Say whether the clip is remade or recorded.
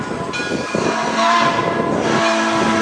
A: recorded